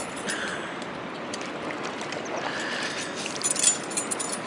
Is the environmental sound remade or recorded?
recorded